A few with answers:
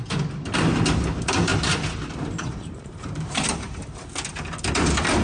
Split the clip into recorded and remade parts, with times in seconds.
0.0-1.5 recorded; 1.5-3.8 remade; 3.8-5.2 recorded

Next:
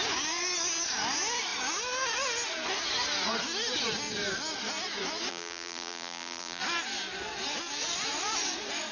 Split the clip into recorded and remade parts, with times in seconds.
0.0-5.3 recorded; 5.3-6.6 remade; 6.6-8.9 recorded

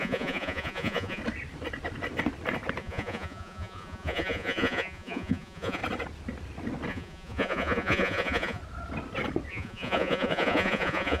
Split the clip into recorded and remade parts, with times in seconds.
0.0-1.2 remade; 1.2-2.8 recorded; 2.8-5.8 remade; 5.8-6.9 recorded; 6.9-8.6 remade; 8.6-9.5 recorded; 9.5-11.2 remade

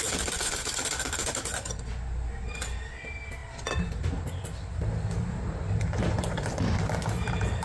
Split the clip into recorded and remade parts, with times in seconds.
0.0-7.6 recorded

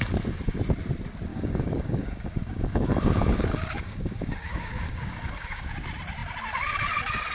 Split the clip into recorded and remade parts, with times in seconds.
0.0-1.3 recorded; 1.3-5.7 remade; 5.7-7.3 recorded